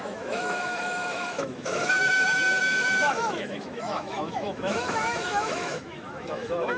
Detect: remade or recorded remade